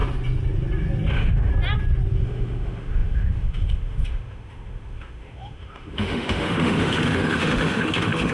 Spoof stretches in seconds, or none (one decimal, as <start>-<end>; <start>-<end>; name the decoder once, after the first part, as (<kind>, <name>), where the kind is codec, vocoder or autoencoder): 1.1-1.5 (autoencoder, DAC-VAE); 2.2-8.3